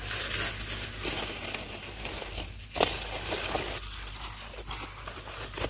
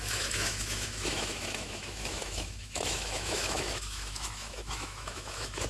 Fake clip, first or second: second